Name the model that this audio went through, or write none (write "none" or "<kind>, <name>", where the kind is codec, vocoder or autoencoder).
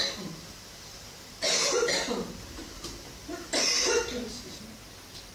none